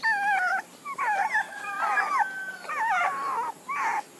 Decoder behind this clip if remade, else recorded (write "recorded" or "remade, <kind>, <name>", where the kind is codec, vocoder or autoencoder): recorded